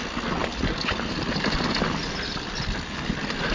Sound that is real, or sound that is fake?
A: real